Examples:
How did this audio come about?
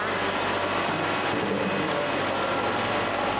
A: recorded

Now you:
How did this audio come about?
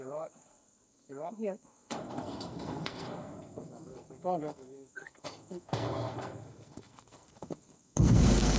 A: remade